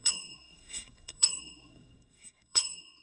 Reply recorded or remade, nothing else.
remade